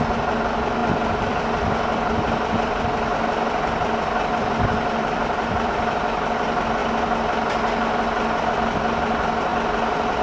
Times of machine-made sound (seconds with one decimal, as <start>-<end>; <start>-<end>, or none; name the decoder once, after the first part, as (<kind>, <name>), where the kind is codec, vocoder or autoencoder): 0.8-5.7 (vocoder, BigVGAN v2); 9.5-10.2